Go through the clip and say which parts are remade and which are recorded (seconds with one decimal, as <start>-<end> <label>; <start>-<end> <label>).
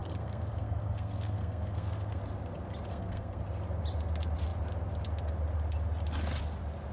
0.0-2.2 remade; 2.2-2.9 recorded; 2.9-3.4 remade; 3.4-6.9 recorded